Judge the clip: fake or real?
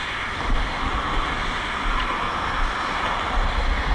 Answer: real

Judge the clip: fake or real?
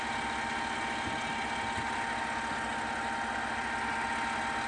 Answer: real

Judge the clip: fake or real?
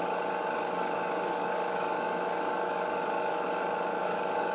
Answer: fake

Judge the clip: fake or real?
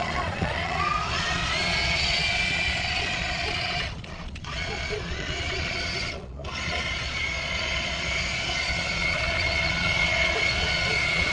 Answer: fake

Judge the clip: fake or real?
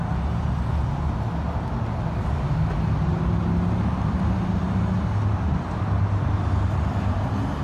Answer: real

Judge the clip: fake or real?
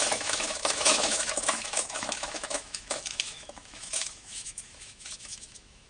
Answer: fake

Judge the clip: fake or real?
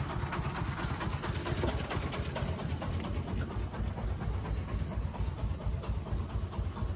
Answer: real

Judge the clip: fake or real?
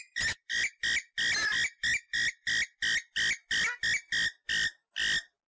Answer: real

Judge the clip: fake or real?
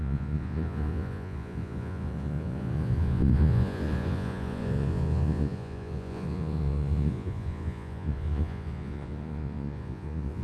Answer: fake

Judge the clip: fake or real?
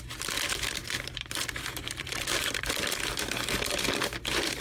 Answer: fake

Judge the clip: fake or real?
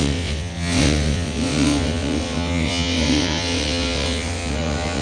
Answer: fake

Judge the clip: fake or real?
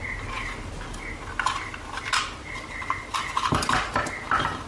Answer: real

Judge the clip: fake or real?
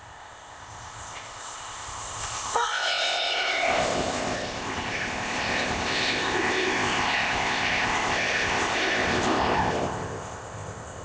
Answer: fake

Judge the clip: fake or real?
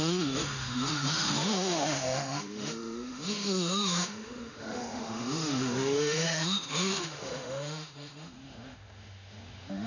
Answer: fake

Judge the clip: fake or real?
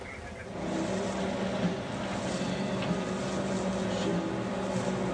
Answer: real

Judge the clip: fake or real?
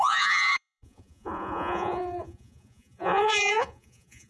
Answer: fake